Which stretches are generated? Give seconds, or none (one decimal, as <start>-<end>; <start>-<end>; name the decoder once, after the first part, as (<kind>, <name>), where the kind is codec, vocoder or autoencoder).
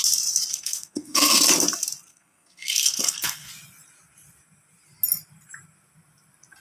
0.5-1.4 (codec, SNAC); 2.1-3.5